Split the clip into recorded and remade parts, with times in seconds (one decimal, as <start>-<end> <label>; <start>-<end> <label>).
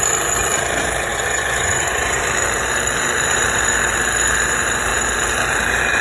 0.0-1.1 recorded; 1.1-2.2 remade; 2.2-6.0 recorded